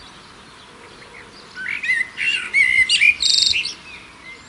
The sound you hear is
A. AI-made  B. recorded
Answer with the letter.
B